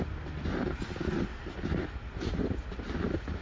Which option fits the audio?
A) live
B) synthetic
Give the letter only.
A